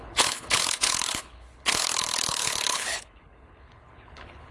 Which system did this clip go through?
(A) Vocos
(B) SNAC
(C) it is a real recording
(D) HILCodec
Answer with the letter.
D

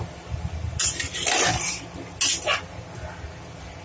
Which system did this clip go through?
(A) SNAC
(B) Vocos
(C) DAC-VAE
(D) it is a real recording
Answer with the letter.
D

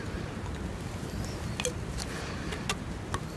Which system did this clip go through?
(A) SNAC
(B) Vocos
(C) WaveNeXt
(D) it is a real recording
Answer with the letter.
D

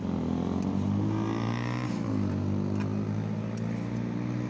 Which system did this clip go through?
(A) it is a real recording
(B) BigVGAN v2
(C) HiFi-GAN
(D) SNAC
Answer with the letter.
A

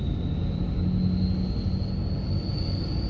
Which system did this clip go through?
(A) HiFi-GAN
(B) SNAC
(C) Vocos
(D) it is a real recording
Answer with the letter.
D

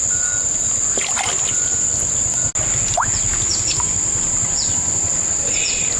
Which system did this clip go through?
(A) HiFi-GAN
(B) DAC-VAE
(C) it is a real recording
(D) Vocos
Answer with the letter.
C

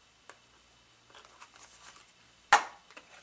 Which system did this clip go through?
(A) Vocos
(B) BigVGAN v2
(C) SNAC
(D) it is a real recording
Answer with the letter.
D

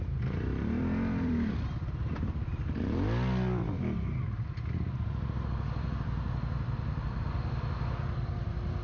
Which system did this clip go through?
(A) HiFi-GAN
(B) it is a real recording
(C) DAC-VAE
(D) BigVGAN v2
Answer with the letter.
D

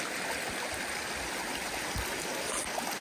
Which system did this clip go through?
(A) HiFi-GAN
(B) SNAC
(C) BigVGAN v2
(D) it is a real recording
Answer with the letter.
D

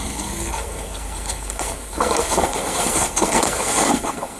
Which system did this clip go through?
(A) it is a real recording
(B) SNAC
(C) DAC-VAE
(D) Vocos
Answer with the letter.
B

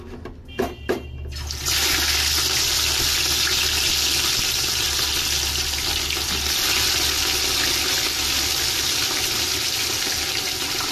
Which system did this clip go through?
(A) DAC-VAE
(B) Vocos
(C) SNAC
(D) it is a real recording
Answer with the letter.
D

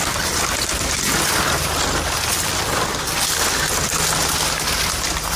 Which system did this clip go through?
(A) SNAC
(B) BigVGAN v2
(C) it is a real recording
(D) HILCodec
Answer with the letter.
C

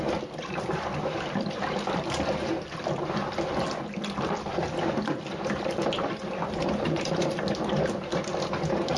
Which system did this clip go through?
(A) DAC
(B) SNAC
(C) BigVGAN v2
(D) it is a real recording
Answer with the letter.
D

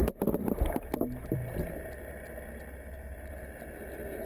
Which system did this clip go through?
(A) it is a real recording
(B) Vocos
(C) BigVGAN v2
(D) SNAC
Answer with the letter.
C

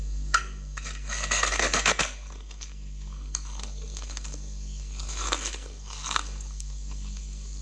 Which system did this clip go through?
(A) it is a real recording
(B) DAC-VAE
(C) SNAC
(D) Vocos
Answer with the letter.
C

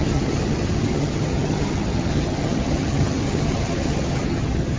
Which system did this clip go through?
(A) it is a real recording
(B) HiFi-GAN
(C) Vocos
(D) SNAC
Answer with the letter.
B